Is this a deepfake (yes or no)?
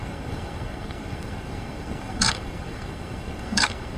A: yes